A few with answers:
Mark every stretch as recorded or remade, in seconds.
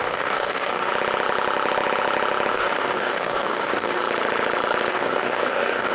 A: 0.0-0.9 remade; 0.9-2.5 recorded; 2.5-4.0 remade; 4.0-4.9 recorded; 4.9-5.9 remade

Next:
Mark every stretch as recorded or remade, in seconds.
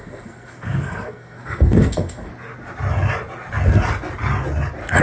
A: 0.0-2.3 remade; 2.3-5.0 recorded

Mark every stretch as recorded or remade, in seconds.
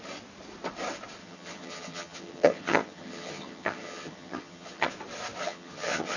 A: 0.0-1.2 recorded; 1.2-4.9 remade; 4.9-5.4 recorded; 5.4-6.2 remade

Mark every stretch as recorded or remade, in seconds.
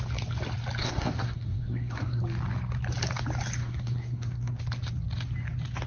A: 0.0-0.8 recorded; 0.8-2.2 remade; 2.2-3.6 recorded; 3.6-4.6 remade; 4.6-5.9 recorded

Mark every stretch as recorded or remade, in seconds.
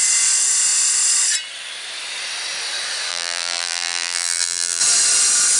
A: 0.0-3.1 recorded; 3.1-4.8 remade; 4.8-5.6 recorded